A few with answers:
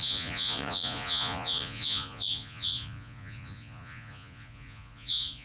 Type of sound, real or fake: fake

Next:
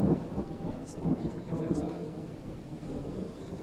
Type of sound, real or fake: fake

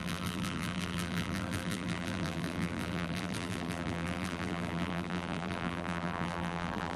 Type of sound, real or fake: fake